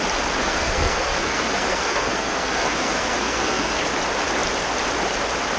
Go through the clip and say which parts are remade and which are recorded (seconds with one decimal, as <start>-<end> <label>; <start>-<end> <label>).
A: 0.0-0.4 recorded; 0.4-3.8 remade; 3.8-5.6 recorded